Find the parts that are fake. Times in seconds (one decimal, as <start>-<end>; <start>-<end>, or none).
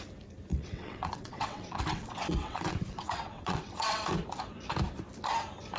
0.5-4.0